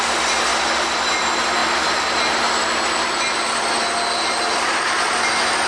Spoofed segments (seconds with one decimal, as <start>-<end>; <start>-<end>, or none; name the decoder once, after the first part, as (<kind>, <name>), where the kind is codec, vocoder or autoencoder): none